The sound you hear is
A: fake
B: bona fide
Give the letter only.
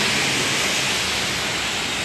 A